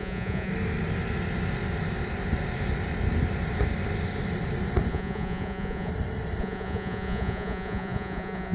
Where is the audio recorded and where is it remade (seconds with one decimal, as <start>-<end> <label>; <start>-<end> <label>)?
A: 0.0-0.5 remade; 0.5-4.9 recorded; 4.9-5.9 remade; 5.9-6.4 recorded; 6.4-8.5 remade